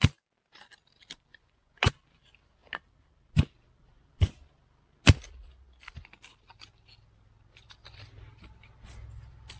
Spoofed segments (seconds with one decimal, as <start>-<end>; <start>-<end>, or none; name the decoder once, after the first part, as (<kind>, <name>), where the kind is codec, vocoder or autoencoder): 1.3-1.9 (vocoder, Vocos)